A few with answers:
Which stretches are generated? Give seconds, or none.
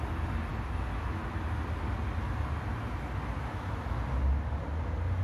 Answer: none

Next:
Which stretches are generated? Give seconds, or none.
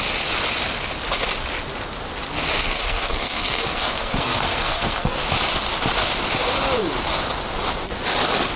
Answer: 2.6-5.2 (codec, SNAC)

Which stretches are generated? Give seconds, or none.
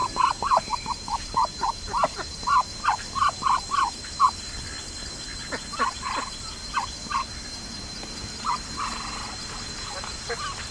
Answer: none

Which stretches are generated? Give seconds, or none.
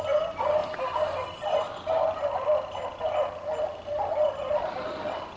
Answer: none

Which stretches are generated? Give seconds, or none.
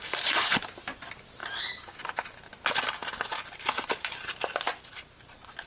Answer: none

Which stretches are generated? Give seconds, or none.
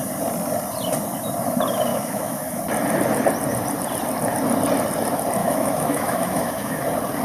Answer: 1.9-2.6 (autoencoder, DAC-VAE); 5.4-6.8